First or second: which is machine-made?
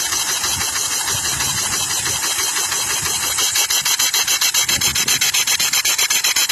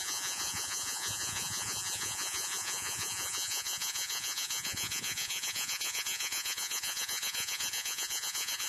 second